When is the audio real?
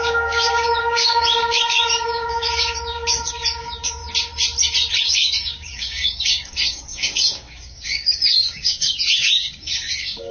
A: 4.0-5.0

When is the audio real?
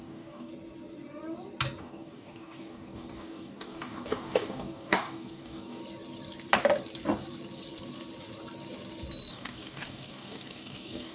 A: 0.5-1.8; 5.8-9.3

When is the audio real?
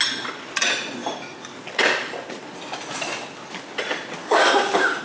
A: 0.0-4.2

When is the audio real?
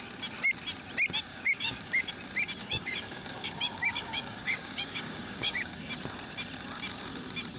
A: 0.0-1.3; 2.1-2.6; 5.9-7.6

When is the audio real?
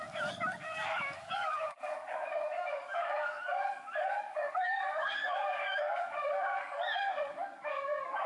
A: none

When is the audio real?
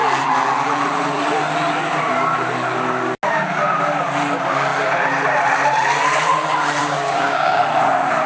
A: 0.0-6.8; 7.6-8.3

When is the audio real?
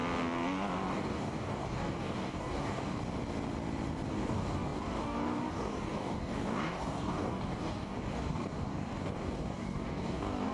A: 0.0-0.9; 3.0-4.1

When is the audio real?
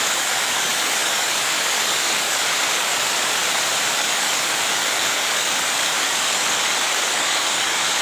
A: 3.4-3.9